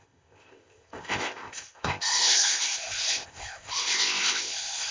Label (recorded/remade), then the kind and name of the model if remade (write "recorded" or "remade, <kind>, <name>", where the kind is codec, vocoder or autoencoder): remade, codec, ZipCodec